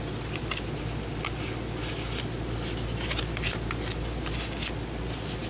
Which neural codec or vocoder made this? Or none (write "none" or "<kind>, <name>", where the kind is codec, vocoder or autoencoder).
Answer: none